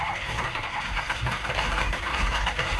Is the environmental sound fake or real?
fake